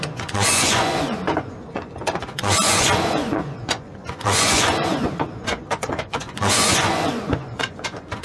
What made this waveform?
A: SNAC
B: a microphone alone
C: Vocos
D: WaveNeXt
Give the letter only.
C